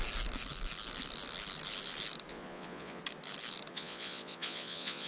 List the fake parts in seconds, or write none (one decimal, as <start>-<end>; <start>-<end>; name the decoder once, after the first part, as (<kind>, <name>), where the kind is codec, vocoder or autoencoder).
2.3-3.0 (vocoder, Vocos); 3.7-5.1